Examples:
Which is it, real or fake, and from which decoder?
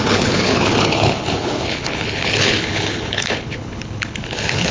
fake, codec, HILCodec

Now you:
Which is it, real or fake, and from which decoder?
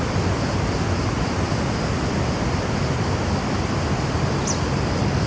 real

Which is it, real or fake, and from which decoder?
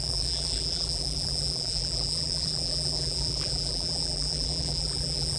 fake, vocoder, BigVGAN v2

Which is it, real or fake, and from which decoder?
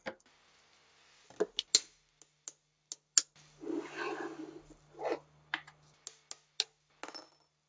real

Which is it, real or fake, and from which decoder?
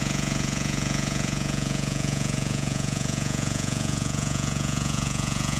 fake, vocoder, Vocos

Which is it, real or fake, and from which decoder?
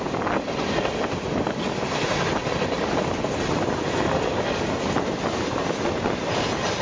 real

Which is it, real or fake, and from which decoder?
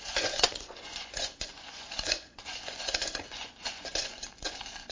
fake, vocoder, Vocos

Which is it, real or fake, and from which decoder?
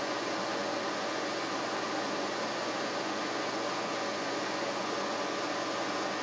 fake, vocoder, Vocos